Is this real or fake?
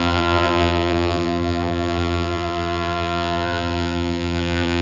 fake